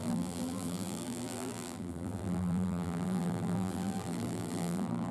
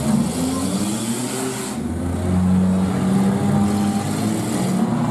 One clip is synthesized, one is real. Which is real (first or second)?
second